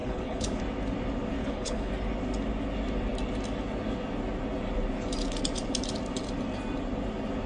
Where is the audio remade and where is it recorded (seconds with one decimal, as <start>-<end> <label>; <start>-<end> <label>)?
0.0-0.6 remade; 0.6-1.4 recorded; 1.4-1.9 remade; 1.9-7.5 recorded